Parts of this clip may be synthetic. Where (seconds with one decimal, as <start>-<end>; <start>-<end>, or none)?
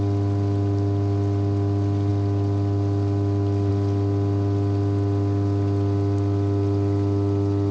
none